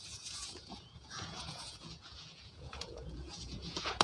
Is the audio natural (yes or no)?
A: no